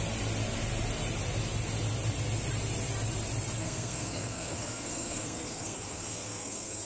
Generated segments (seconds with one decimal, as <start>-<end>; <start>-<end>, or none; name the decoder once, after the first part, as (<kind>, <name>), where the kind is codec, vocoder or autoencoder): 3.6-6.8 (codec, SNAC)